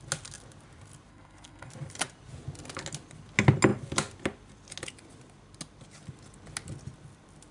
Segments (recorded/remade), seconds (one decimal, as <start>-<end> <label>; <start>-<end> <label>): 0.0-1.1 recorded; 1.1-1.7 remade; 1.7-7.5 recorded